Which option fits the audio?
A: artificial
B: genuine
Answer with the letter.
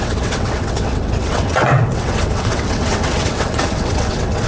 A